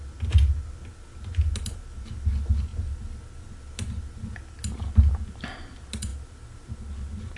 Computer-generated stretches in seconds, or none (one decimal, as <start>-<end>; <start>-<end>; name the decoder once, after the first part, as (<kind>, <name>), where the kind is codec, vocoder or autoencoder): none